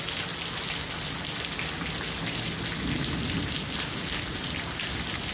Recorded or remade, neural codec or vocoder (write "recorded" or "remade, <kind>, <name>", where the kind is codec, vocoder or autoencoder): recorded